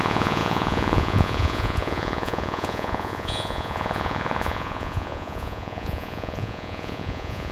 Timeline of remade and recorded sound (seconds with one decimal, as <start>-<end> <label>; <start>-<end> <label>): 0.0-7.5 remade